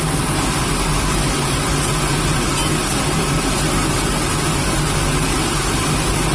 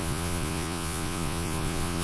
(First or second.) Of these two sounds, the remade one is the second